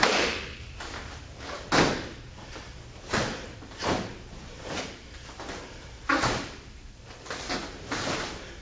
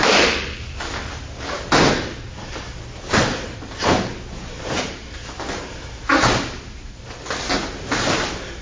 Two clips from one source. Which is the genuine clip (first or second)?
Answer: second